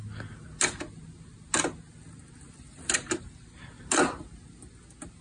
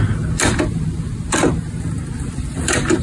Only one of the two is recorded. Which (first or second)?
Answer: first